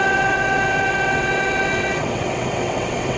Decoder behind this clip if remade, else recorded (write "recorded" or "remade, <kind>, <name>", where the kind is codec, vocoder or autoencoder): remade, vocoder, WaveNeXt